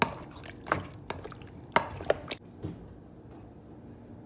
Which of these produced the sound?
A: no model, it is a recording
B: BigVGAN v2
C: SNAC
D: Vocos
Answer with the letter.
A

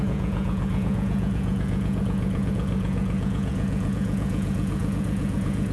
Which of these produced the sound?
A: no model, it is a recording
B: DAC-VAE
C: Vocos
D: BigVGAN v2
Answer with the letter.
C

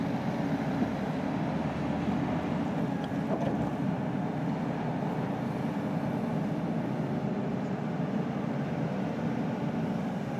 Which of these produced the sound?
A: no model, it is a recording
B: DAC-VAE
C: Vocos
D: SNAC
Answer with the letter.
A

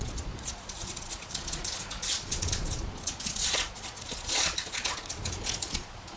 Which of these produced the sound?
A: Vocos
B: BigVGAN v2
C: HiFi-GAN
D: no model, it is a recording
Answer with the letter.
A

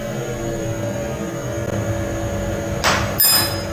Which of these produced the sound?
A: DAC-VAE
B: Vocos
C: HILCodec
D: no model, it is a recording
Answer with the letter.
D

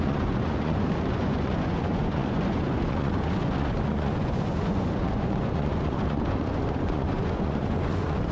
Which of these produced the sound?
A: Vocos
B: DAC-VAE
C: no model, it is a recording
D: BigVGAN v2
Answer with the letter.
A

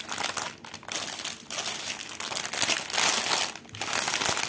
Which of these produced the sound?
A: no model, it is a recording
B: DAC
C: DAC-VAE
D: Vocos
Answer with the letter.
A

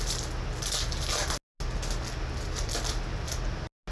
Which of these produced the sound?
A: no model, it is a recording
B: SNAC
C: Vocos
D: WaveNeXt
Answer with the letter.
A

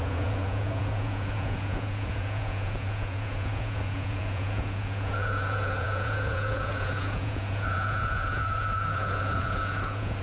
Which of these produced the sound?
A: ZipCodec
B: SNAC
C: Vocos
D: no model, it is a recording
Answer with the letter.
C